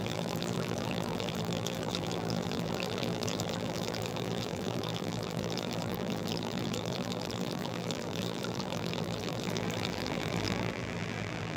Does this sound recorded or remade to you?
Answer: remade